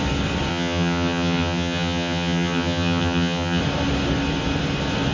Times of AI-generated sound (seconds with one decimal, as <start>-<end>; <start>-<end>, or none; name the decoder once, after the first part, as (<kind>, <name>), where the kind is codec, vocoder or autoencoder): 0.5-3.6 (vocoder, HiFi-GAN)